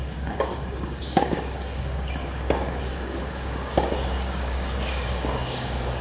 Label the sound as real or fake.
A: fake